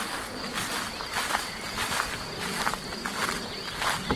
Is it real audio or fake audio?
real